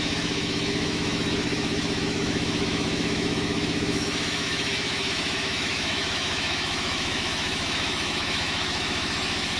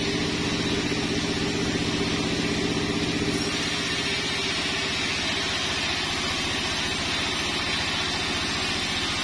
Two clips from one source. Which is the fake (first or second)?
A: first